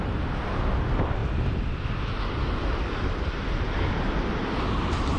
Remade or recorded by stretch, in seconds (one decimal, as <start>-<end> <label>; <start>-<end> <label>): 0.0-5.2 recorded